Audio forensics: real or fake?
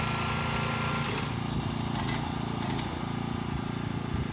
real